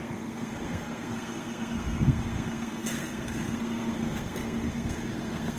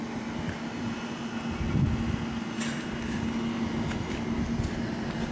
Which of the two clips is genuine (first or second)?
second